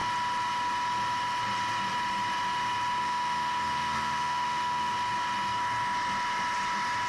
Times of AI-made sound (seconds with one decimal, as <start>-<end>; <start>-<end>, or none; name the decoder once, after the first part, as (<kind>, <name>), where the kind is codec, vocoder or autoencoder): 3.0-4.9 (autoencoder, DAC-VAE)